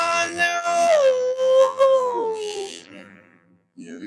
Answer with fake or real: fake